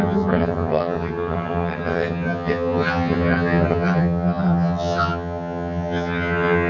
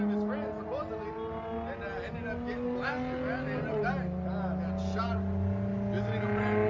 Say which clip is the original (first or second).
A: second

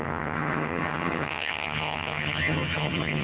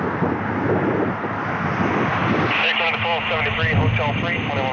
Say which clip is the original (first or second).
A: second